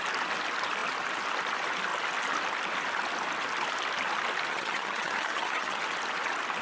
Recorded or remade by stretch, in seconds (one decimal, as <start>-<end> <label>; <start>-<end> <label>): 0.0-4.5 recorded; 4.5-5.8 remade; 5.8-6.6 recorded